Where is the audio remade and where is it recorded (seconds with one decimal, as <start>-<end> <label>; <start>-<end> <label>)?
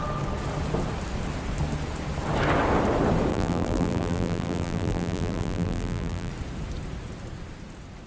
0.0-3.3 recorded; 3.3-6.3 remade; 6.3-8.1 recorded